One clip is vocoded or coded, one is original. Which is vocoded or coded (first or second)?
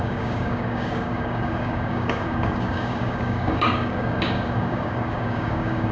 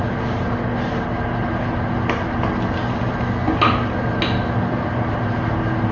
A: first